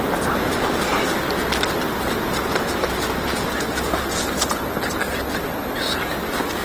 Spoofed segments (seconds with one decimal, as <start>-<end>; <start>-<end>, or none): 0.5-1.1; 2.4-3.9